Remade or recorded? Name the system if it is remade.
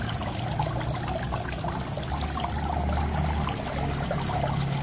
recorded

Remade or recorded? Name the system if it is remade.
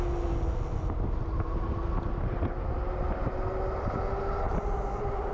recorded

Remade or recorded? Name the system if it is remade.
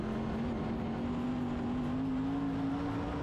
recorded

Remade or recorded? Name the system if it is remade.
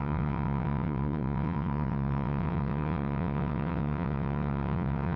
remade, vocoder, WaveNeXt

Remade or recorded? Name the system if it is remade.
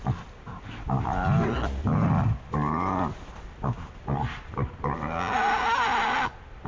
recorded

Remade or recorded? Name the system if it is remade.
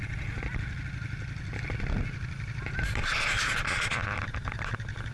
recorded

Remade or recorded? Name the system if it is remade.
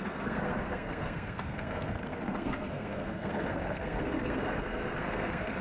remade, codec, SNAC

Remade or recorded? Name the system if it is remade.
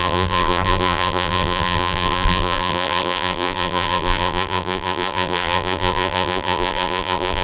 remade, vocoder, BigVGAN v2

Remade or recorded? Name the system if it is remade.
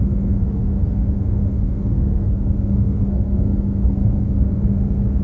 remade, codec, SNAC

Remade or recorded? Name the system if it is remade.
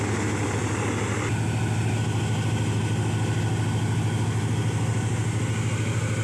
recorded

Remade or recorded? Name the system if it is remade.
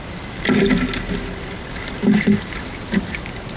recorded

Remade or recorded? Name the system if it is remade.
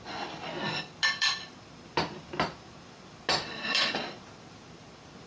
recorded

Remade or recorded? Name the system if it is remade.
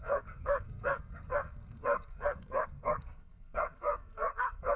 remade, codec, SNAC